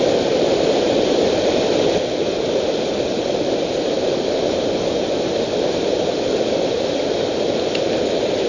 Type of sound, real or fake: real